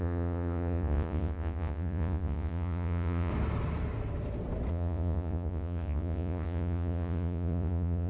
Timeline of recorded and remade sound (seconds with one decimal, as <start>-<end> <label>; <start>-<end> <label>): 0.0-3.3 remade; 3.3-4.7 recorded; 4.7-8.1 remade